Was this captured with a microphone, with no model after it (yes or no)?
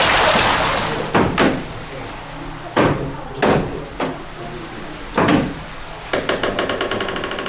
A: yes